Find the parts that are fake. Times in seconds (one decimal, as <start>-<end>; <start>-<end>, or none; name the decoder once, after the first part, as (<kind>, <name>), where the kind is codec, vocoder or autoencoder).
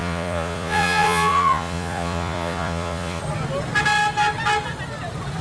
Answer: 0.0-3.2 (vocoder, Vocos)